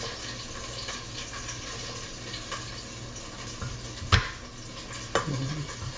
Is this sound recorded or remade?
recorded